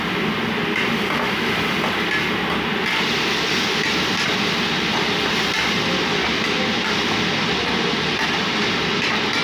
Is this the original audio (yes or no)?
yes